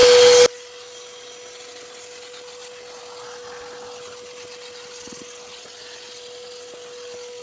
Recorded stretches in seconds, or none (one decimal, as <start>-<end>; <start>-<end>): 0.0-7.4